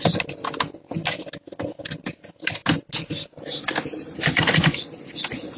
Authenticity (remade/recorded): recorded